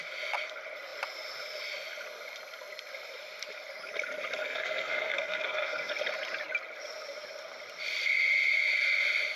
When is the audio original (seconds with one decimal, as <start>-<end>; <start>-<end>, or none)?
0.0-4.4; 5.9-9.4